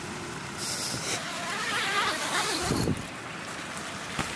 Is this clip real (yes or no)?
yes